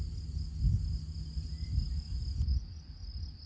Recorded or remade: recorded